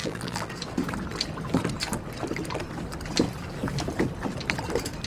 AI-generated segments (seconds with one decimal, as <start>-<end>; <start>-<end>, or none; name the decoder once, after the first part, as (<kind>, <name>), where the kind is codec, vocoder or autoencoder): 0.0-0.5 (vocoder, BigVGAN v2)